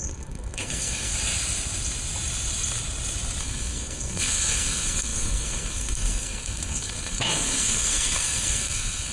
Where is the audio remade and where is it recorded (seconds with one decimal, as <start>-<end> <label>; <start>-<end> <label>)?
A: 0.0-1.1 remade; 1.1-3.4 recorded; 3.4-9.1 remade